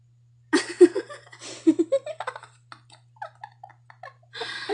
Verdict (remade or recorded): recorded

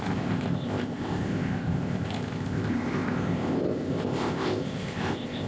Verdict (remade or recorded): remade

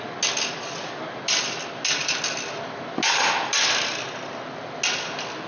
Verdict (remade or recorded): recorded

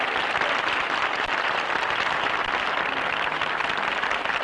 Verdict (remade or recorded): recorded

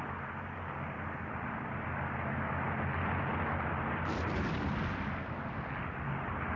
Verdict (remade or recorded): recorded